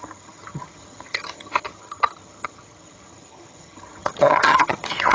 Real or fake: fake